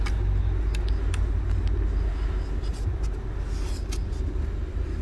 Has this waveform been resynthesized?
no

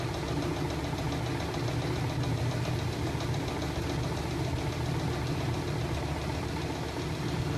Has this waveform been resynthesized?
no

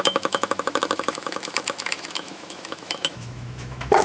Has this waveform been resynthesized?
yes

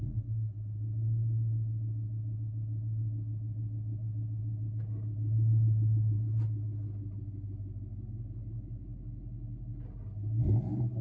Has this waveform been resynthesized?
no